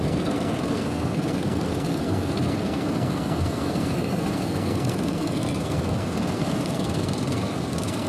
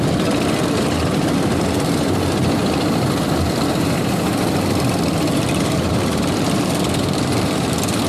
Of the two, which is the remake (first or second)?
first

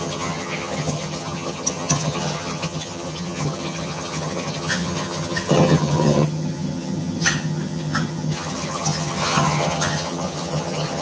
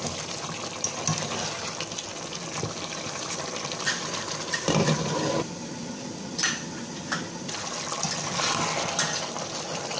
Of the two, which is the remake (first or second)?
first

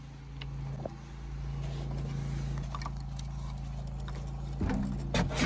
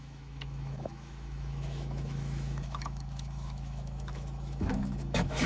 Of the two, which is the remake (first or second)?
second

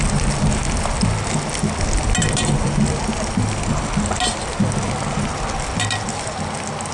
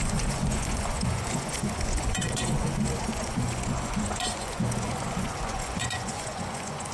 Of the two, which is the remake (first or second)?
second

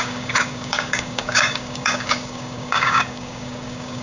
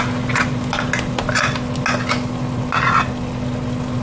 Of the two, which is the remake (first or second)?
first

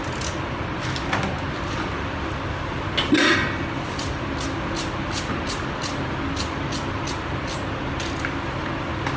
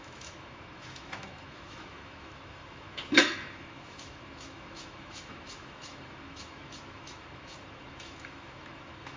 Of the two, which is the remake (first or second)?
second